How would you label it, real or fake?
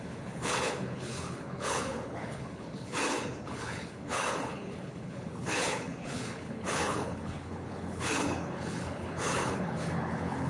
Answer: fake